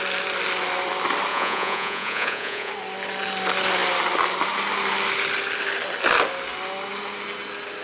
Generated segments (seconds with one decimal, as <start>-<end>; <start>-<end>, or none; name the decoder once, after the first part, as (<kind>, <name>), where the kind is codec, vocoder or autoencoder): 1.3-2.7 (vocoder, Vocos)